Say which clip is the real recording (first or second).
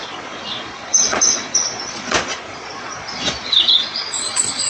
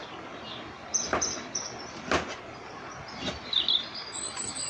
second